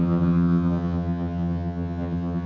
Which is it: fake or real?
fake